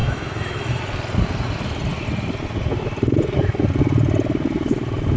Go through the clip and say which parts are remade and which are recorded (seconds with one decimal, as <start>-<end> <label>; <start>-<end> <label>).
0.0-0.8 remade; 0.8-5.2 recorded